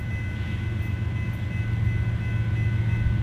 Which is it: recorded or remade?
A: recorded